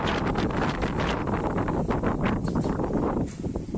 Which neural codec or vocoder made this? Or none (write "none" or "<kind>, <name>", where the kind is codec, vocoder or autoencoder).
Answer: none